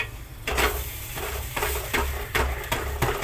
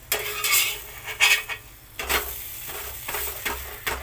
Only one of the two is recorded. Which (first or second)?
second